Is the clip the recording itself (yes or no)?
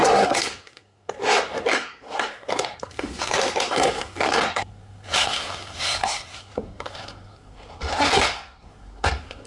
no